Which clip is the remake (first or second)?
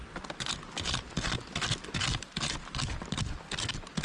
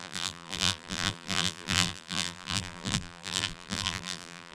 second